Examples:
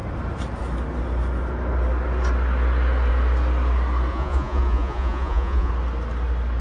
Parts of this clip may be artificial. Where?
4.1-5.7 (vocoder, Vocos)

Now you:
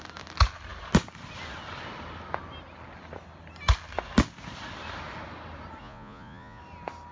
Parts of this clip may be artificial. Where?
5.8-6.6 (vocoder, Vocos)

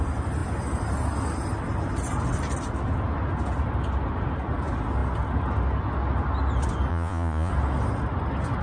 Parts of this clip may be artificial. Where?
6.9-7.5 (vocoder, Vocos)

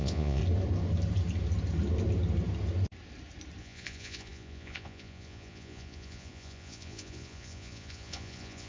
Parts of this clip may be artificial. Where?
0.0-0.4 (vocoder, Vocos); 3.6-8.7

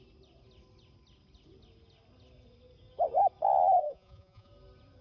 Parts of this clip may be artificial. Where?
3.8-4.5 (vocoder, Vocos)

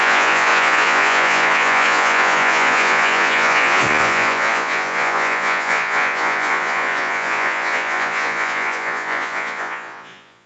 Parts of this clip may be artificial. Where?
0.0-10.5 (vocoder, Vocos)

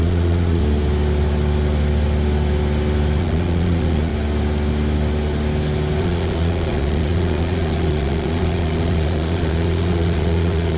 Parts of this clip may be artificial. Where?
0.0-0.6 (vocoder, Vocos); 3.2-4.1; 6.0-10.8

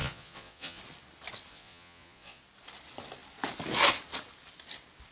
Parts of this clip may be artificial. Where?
0.0-0.8 (vocoder, Vocos); 1.5-2.4